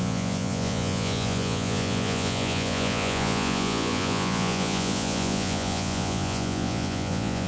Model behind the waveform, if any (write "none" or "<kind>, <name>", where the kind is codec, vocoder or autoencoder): vocoder, Vocos